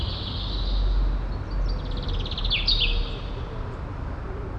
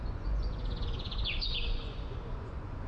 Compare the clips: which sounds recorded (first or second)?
first